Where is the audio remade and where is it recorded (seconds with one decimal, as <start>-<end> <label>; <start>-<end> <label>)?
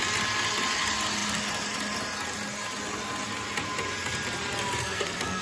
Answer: 0.0-4.8 recorded; 4.8-5.4 remade